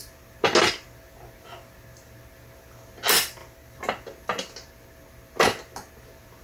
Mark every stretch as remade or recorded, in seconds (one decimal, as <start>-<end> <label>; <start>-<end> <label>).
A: 0.0-6.4 recorded